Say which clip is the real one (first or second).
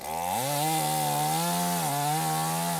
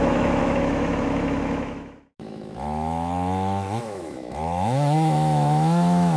first